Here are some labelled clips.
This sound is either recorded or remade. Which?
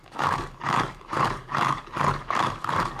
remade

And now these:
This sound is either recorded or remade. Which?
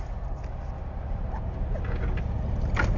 recorded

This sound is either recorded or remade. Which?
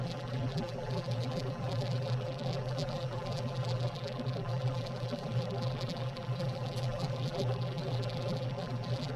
remade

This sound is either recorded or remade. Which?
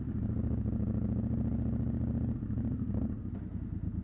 recorded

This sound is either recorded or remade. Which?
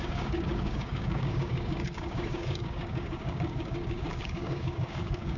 remade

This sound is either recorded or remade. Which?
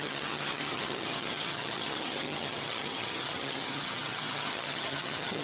remade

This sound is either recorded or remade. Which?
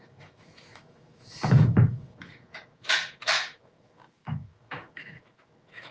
remade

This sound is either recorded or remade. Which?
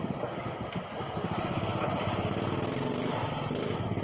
recorded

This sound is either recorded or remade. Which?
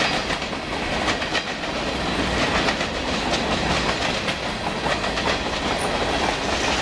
recorded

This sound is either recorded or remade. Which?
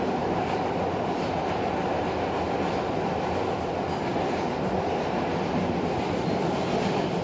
recorded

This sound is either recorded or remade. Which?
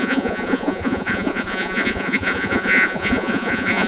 remade